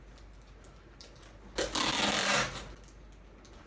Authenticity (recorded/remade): recorded